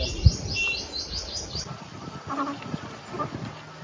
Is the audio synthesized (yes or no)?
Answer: no